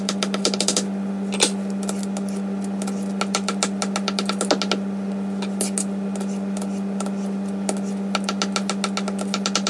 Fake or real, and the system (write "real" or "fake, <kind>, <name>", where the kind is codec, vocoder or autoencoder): real